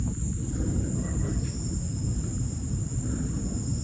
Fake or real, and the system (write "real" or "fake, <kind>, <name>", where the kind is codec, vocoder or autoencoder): real